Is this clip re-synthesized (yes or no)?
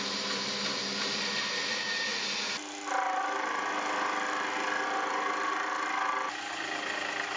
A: no